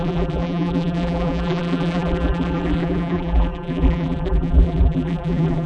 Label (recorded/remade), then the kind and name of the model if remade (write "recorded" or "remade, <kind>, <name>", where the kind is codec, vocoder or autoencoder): remade, vocoder, BigVGAN v2